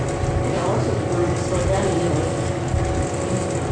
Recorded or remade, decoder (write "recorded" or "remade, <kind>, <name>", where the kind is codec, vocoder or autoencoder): recorded